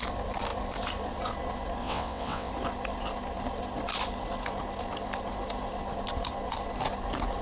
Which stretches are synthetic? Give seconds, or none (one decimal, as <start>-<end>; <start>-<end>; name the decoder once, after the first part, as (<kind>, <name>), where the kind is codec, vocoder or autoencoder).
1.8-2.5 (vocoder, WaveNeXt)